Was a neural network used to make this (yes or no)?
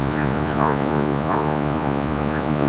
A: yes